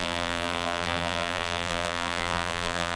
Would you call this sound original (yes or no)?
no